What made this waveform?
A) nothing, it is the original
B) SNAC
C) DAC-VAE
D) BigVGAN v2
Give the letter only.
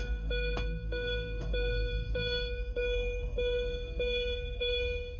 B